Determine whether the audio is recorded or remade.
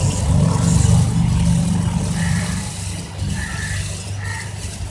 recorded